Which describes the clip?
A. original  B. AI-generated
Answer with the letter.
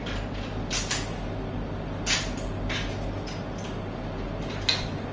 A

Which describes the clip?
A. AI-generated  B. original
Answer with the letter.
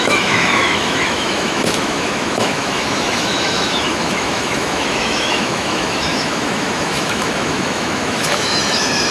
A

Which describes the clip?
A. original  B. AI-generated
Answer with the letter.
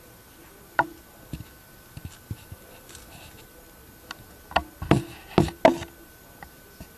A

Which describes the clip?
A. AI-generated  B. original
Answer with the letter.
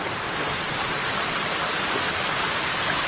B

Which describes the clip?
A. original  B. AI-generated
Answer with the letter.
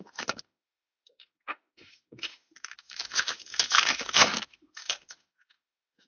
B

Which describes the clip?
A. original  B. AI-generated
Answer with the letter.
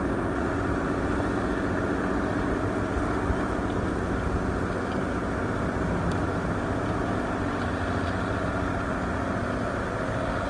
A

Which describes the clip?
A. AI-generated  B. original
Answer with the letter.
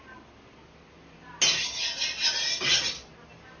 B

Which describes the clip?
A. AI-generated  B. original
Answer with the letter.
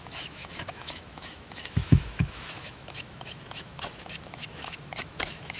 A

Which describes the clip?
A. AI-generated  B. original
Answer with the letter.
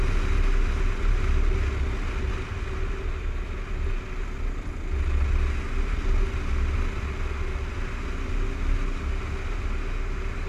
B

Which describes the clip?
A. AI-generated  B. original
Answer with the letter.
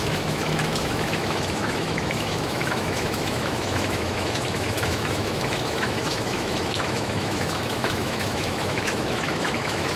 A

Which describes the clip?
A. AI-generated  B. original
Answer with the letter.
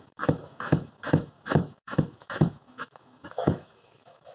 A